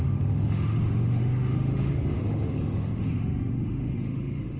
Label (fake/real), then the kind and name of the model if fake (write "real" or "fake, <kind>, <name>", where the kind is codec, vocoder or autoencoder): fake, autoencoder, DAC-VAE